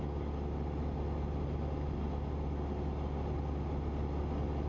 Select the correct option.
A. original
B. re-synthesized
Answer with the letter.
A